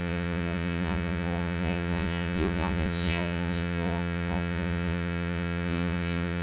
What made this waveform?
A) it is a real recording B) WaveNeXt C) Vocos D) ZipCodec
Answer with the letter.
C